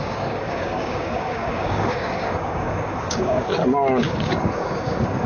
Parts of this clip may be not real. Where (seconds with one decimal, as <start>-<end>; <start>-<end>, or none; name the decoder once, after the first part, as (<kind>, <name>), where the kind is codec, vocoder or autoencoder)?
0.0-3.5 (codec, DAC); 4.0-5.3